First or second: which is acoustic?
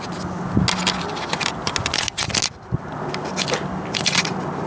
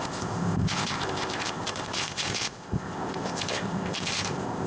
first